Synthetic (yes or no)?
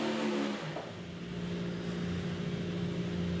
no